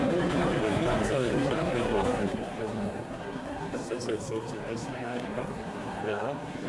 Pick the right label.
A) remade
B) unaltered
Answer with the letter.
A